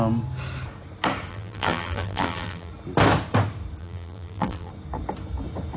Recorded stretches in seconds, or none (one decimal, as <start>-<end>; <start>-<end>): 0.0-1.3; 2.7-3.8; 4.7-5.8